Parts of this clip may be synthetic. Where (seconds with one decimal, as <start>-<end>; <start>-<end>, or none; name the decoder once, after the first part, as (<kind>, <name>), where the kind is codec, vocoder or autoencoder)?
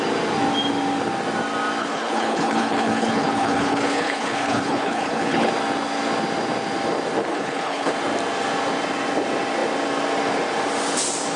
1.8-5.5 (codec, HILCodec); 7.3-7.9